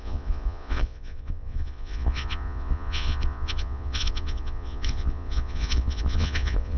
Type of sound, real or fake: fake